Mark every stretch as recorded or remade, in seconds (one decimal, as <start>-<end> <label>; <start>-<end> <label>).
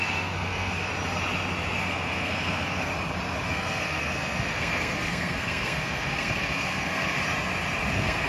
0.0-0.9 remade; 0.9-1.8 recorded; 1.8-2.9 remade; 2.9-3.5 recorded; 3.5-7.2 remade; 7.2-7.9 recorded; 7.9-8.3 remade